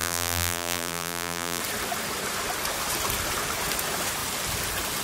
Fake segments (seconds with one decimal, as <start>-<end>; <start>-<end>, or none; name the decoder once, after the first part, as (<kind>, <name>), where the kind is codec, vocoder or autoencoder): 0.0-1.6 (vocoder, BigVGAN v2)